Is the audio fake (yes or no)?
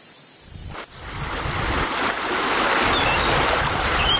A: no